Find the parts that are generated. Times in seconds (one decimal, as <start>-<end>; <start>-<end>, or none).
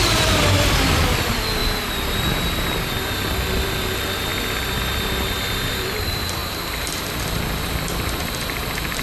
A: 0.0-1.6; 3.5-4.3; 5.7-9.0